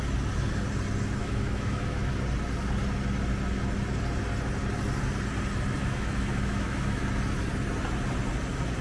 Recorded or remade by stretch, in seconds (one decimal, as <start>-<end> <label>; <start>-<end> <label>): 0.0-1.2 recorded; 1.2-2.1 remade; 2.1-5.8 recorded; 5.8-7.0 remade; 7.0-8.8 recorded